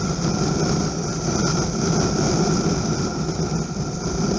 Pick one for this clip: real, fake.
real